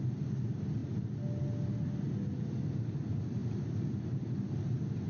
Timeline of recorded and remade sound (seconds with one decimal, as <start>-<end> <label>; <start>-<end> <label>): 0.0-5.1 recorded